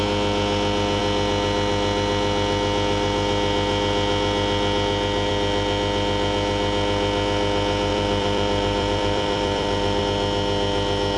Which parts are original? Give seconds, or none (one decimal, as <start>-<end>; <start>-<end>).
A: 0.0-7.9; 10.0-11.2